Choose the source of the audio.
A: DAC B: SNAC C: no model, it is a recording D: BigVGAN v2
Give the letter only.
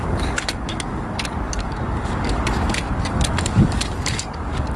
A